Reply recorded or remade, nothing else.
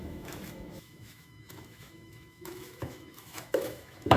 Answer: remade